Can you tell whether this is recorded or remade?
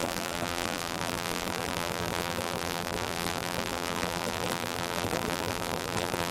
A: remade